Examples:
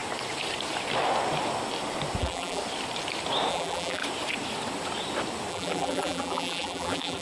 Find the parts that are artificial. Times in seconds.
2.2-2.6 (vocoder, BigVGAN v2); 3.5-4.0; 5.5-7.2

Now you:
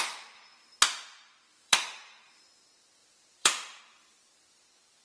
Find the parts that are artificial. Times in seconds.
1.5-2.4 (vocoder, BigVGAN v2); 3.0-3.8

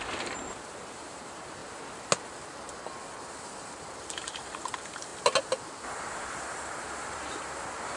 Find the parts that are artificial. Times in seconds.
0.0-1.6 (vocoder, BigVGAN v2); 4.0-5.1; 6.3-8.0

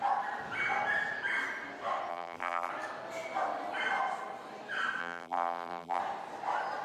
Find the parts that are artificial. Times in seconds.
2.1-2.7 (vocoder, BigVGAN v2); 5.0-6.0

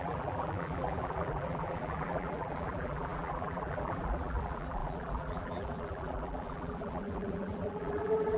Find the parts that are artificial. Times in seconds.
0.0-8.4 (vocoder, BigVGAN v2)